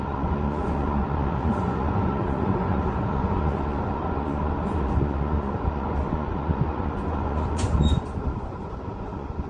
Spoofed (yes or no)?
yes